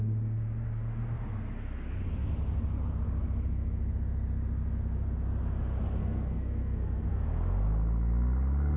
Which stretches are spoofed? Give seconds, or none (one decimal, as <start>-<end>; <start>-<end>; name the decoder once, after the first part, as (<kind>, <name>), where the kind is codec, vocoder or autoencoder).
6.0-7.2 (codec, SNAC)